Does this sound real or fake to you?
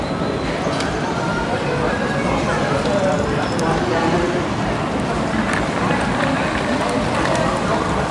real